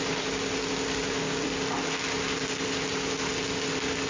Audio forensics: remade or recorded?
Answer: recorded